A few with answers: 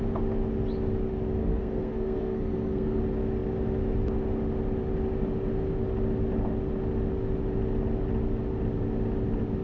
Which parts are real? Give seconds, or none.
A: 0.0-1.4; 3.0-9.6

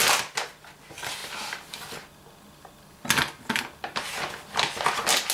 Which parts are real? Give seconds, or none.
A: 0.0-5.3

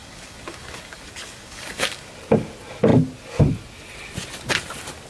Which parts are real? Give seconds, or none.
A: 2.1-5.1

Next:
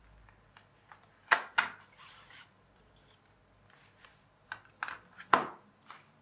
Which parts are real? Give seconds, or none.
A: 0.0-6.2

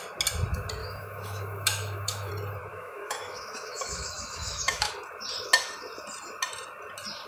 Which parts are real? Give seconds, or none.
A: 0.0-0.8; 2.3-2.7; 4.9-7.3

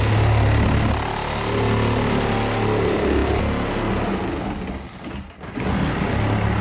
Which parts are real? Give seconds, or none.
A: 0.0-6.6

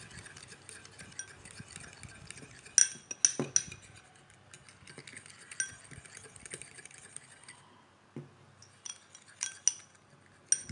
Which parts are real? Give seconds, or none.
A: 0.0-10.7